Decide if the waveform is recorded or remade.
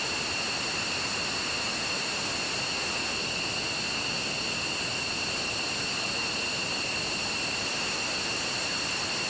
recorded